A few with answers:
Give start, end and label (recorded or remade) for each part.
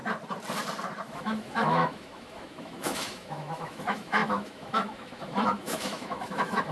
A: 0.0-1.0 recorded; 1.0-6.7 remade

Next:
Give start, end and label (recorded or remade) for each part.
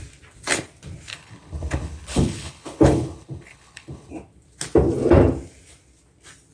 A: 0.0-1.1 recorded; 1.1-4.1 remade; 4.1-6.5 recorded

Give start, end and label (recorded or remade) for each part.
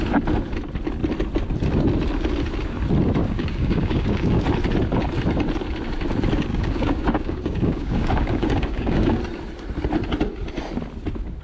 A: 0.0-3.2 recorded; 3.2-4.4 remade; 4.4-6.5 recorded; 6.5-9.2 remade; 9.2-11.4 recorded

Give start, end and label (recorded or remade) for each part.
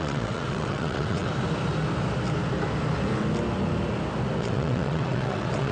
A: 0.0-1.3 remade; 1.3-4.4 recorded; 4.4-5.7 remade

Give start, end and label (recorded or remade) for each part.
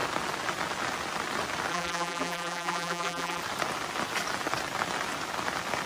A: 0.0-1.7 recorded; 1.7-3.4 remade; 3.4-5.9 recorded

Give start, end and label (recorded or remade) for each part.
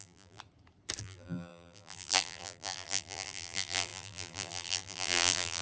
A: 0.0-0.4 remade; 0.4-1.0 recorded; 1.0-5.6 remade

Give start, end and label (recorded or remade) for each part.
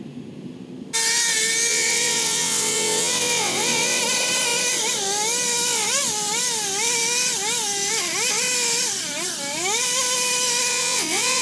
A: 0.0-1.7 recorded; 1.7-4.0 remade; 4.0-10.7 recorded; 10.7-11.4 remade